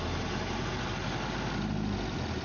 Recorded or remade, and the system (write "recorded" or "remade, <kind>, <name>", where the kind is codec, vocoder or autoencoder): recorded